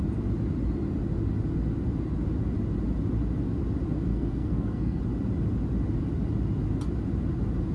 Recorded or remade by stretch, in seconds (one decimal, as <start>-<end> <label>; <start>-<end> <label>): 0.0-4.1 recorded; 4.1-5.0 remade; 5.0-7.7 recorded